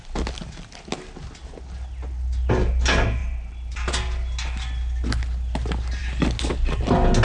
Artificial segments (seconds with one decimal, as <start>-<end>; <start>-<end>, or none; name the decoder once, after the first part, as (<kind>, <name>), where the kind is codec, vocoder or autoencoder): 3.2-3.9 (vocoder, BigVGAN v2)